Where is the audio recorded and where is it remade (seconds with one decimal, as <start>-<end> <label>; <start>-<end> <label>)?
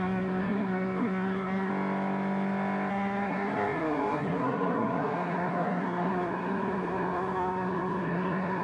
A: 0.0-1.7 remade; 1.7-2.9 recorded; 2.9-8.6 remade